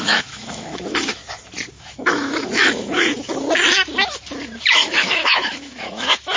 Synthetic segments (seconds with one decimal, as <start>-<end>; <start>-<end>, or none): 0.0-1.2; 1.7-3.3; 4.6-6.4